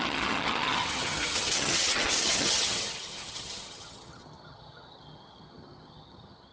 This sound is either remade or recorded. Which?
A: remade